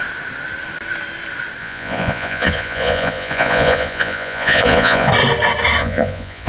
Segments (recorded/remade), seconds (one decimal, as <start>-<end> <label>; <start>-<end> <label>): 0.0-1.6 recorded; 1.6-5.1 remade; 5.1-5.8 recorded; 5.8-6.5 remade